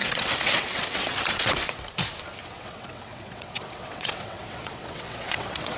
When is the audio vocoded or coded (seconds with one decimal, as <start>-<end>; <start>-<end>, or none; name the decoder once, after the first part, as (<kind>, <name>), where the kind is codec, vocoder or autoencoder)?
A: 0.0-1.8 (vocoder, WaveNeXt); 2.4-5.8